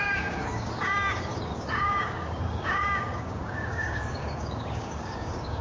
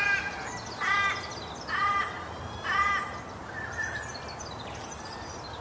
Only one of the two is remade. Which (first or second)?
first